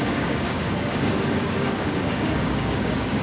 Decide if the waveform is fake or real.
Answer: fake